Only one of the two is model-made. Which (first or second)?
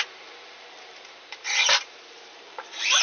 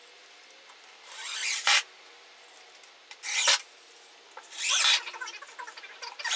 first